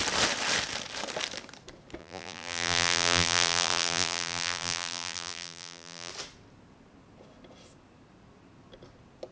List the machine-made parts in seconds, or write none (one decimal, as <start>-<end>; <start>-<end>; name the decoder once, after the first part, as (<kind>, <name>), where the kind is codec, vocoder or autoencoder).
2.0-6.1 (vocoder, BigVGAN v2)